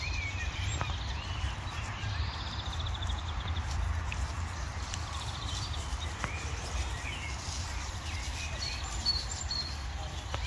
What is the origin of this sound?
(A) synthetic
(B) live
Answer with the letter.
A